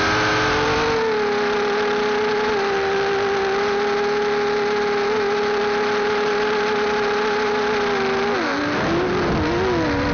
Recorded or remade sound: recorded